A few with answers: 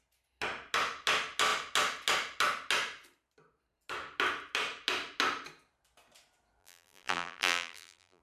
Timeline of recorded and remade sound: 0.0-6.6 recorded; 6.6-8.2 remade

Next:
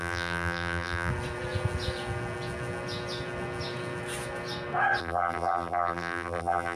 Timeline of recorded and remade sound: 0.0-1.1 remade; 1.1-5.0 recorded; 5.0-6.8 remade

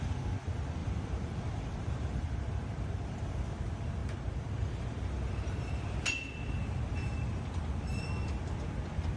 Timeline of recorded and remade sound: 0.0-0.8 recorded; 0.8-3.6 remade; 3.6-4.0 recorded; 4.0-6.0 remade; 6.0-9.2 recorded

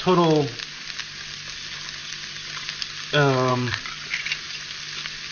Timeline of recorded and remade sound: 0.0-3.5 recorded; 3.5-4.8 remade; 4.8-5.3 recorded

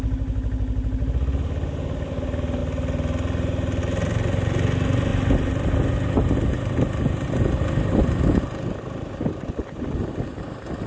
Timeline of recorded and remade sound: 0.0-10.9 recorded

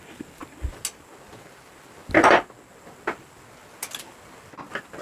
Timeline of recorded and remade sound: 0.0-5.0 recorded